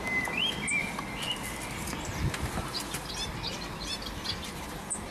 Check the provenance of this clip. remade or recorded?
recorded